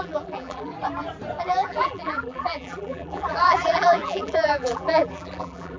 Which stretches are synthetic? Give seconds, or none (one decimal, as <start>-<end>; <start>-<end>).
0.0-0.7; 1.4-5.8